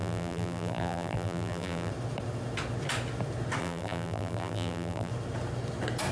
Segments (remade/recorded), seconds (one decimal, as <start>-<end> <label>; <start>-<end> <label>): 0.0-1.9 remade; 1.9-3.6 recorded; 3.6-5.1 remade; 5.1-6.1 recorded